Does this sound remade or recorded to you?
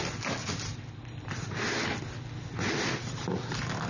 recorded